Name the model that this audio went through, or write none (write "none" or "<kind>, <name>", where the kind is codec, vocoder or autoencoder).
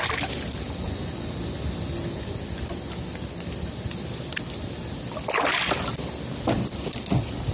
none